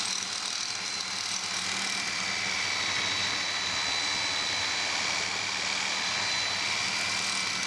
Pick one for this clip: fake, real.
real